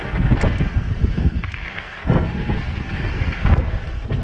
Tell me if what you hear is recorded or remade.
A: remade